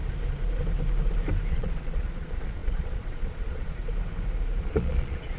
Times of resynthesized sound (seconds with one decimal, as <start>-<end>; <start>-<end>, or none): 1.5-3.8; 4.6-5.4

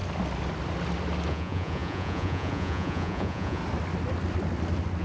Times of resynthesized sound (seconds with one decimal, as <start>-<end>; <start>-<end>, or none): 1.3-3.6

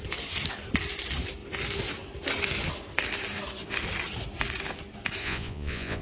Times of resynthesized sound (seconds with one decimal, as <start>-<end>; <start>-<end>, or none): 5.2-6.0

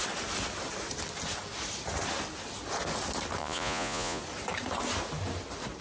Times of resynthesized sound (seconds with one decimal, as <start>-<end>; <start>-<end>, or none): 3.4-4.2

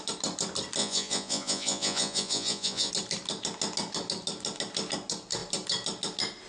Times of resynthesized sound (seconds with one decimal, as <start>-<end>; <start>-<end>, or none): 0.8-2.9

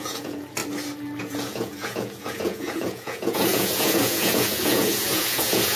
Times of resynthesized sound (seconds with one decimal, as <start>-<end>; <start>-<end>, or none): 0.0-0.6; 1.2-5.8

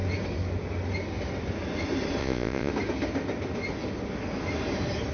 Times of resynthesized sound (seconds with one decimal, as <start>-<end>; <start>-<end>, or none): 2.2-2.7

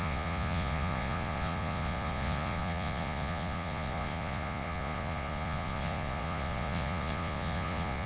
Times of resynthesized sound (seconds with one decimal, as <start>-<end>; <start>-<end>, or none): 0.0-8.1